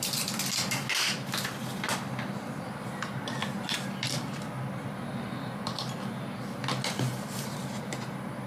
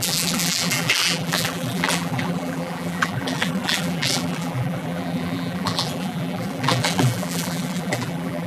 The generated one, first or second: second